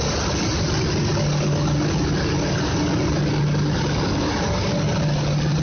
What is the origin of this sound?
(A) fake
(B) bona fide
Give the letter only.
B